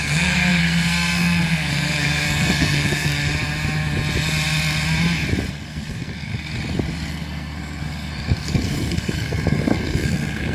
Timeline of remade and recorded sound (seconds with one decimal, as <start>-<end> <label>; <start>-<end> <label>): 0.0-3.2 remade; 3.2-5.5 recorded; 5.5-6.3 remade; 6.3-7.1 recorded; 7.1-10.5 remade